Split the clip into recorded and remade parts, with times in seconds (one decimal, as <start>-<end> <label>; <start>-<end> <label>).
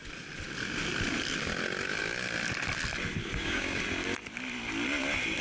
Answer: 0.0-3.2 recorded; 3.2-3.8 remade; 3.8-5.4 recorded